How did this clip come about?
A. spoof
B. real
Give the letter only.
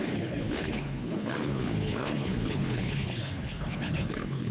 A